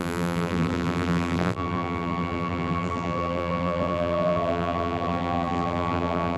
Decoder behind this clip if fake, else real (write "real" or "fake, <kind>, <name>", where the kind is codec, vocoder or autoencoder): fake, vocoder, BigVGAN v2